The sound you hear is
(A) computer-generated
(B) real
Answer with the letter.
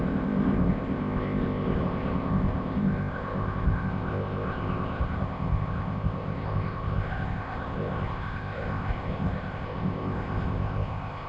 A